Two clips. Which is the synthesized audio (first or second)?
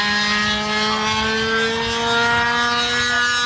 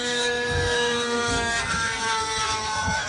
second